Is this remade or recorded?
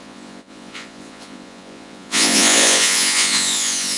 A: remade